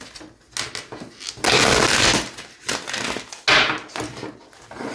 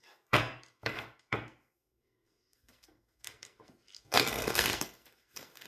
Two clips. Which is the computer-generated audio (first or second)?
second